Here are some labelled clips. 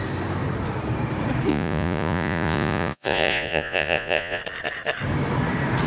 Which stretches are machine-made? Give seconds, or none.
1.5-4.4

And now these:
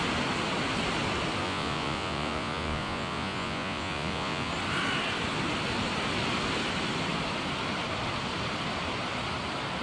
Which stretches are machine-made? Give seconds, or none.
1.4-4.5

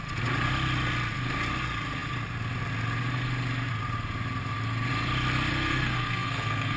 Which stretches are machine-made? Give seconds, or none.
5.5-6.8

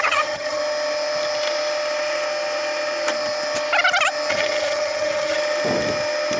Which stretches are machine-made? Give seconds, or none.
0.0-0.6; 4.3-5.4

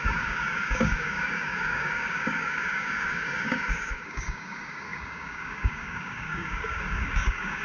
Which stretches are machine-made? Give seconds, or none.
0.0-7.6